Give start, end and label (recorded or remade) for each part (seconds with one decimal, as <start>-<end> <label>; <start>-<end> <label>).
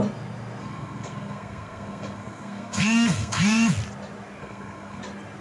0.0-0.6 recorded; 0.6-3.7 remade; 3.7-4.4 recorded; 4.4-5.0 remade; 5.0-5.4 recorded